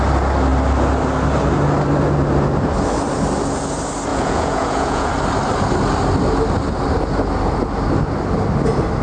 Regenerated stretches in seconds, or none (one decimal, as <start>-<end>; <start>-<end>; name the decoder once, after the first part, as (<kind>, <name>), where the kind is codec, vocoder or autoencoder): 4.1-5.1 (vocoder, Vocos)